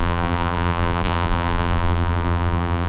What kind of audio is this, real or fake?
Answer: fake